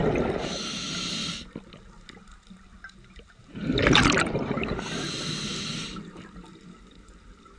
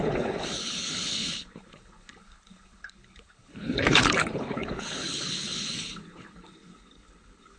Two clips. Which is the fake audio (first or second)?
second